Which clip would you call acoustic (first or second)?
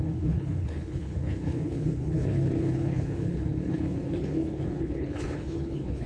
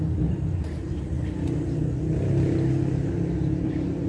second